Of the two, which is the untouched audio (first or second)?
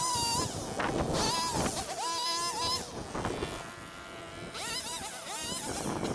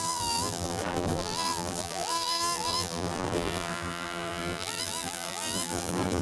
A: first